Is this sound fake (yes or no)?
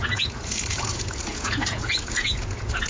yes